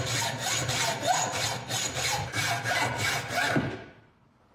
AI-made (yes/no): no